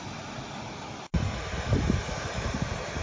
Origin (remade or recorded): recorded